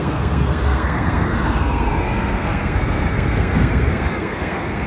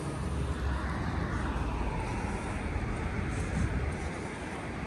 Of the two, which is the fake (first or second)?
first